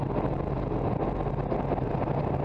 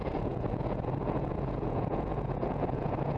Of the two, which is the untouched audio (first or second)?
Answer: first